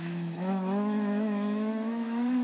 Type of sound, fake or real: fake